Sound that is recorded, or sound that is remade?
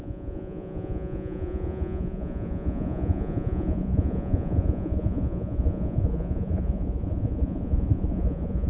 remade